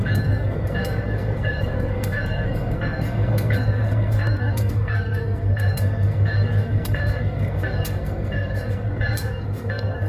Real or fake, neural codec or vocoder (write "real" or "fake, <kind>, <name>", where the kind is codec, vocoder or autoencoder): fake, codec, SNAC